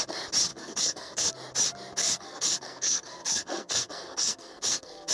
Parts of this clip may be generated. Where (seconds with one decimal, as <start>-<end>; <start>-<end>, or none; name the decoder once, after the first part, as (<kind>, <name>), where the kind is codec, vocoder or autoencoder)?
0.5-1.3 (codec, SNAC); 2.0-5.1